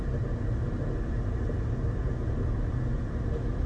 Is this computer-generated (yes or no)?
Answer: no